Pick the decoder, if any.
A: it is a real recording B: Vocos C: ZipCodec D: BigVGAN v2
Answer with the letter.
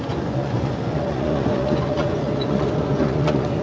B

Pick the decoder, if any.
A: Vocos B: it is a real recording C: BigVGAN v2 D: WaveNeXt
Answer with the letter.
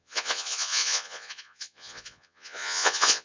A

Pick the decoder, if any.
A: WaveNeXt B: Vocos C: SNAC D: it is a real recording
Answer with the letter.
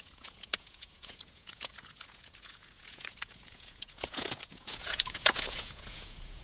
B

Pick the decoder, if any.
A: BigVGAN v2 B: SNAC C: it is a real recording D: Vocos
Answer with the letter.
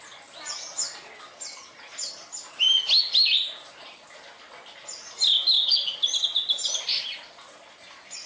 C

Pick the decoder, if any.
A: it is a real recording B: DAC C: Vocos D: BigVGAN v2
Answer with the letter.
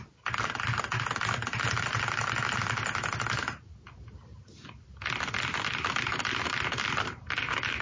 A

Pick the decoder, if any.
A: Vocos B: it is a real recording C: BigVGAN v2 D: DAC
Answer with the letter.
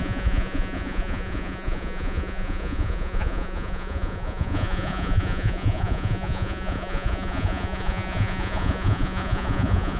A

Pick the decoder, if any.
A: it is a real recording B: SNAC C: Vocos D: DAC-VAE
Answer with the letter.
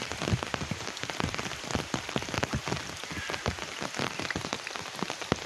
A